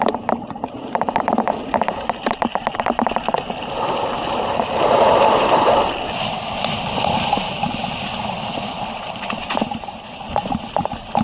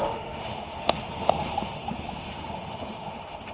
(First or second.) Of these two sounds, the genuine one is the first